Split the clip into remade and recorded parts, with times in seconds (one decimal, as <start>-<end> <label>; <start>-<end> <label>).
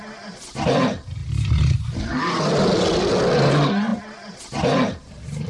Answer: 0.0-1.2 recorded; 1.2-3.5 remade; 3.5-5.5 recorded